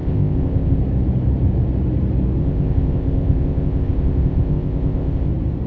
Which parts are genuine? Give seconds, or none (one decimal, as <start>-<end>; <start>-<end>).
0.8-2.4; 5.3-5.7